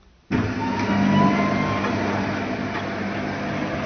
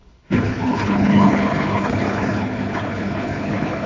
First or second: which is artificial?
second